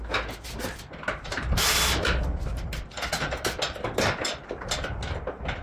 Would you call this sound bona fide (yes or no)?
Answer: yes